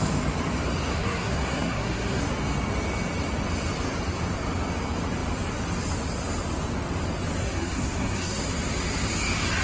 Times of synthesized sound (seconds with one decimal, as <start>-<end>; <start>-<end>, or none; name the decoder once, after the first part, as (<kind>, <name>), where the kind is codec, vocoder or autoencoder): 0.9-2.2 (codec, SNAC); 7.4-8.4